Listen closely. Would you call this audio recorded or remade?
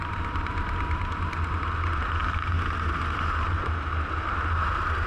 recorded